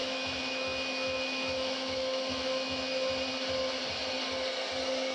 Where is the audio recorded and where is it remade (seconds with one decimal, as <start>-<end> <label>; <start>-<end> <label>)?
0.0-3.1 remade; 3.1-5.1 recorded